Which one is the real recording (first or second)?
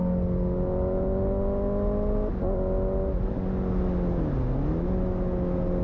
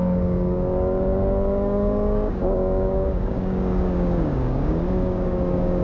first